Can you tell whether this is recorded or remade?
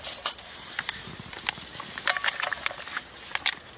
recorded